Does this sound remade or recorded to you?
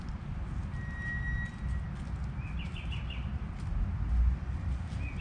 recorded